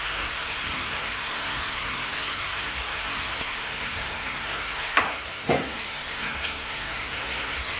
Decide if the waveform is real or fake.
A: fake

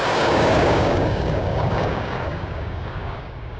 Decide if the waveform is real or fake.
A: fake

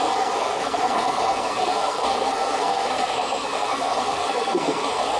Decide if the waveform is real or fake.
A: fake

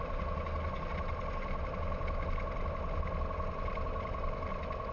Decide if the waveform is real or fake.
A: real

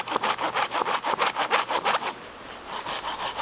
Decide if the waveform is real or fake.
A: real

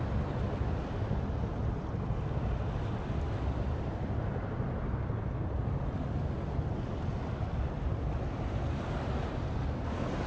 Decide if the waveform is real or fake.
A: real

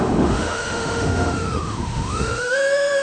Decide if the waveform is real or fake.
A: fake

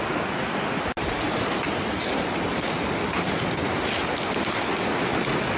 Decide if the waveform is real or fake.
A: real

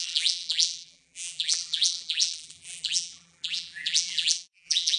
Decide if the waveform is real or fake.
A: fake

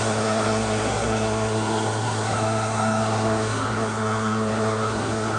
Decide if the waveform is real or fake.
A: fake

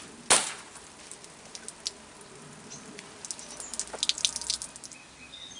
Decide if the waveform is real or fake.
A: real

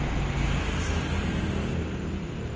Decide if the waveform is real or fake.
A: real